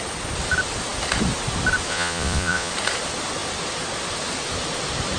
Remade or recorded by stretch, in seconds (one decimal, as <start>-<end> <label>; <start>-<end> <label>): 0.0-1.9 recorded; 1.9-2.7 remade; 2.7-5.2 recorded